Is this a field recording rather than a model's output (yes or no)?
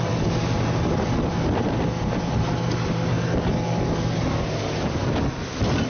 yes